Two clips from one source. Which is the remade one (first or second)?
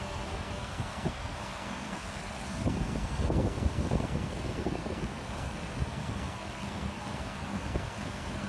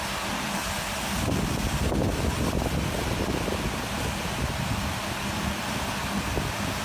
first